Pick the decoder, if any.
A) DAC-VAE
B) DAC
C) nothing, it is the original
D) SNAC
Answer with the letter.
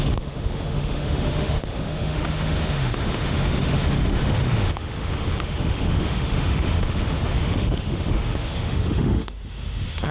A